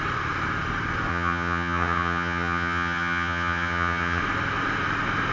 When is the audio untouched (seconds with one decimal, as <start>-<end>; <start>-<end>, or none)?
0.0-1.1; 4.2-5.3